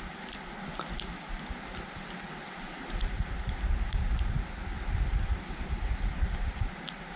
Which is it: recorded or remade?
recorded